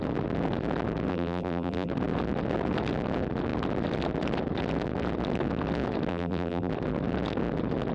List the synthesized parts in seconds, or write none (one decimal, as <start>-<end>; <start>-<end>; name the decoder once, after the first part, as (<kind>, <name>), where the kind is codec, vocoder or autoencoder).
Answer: 1.1-1.9 (vocoder, BigVGAN v2); 6.1-6.7